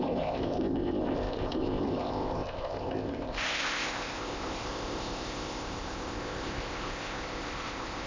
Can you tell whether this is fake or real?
fake